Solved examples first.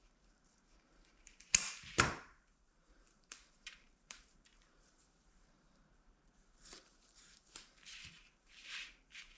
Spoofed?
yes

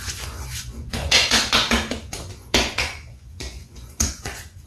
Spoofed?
yes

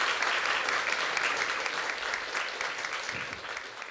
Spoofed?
no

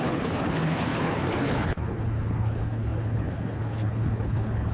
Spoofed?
yes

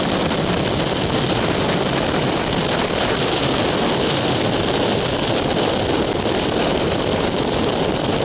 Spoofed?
no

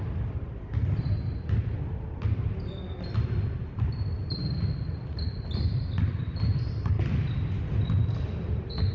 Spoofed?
no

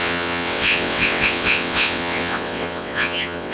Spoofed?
yes